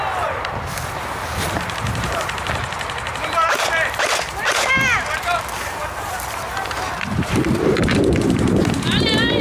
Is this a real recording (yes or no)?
no